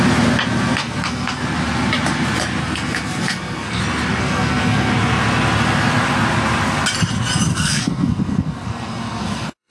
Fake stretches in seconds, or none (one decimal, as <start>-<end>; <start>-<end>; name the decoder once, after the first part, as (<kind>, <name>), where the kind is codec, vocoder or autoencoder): 0.8-1.4 (codec, SNAC); 2.6-3.8; 4.2-4.9; 7.5-9.7